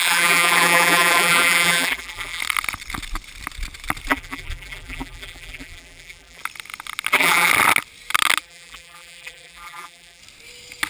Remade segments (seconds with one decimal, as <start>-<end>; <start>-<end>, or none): 0.0-2.4; 4.1-6.4; 7.1-7.5; 8.4-10.2